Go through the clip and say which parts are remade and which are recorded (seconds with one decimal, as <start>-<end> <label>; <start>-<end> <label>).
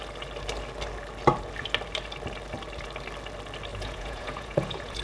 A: 0.0-3.7 recorded; 3.7-5.0 remade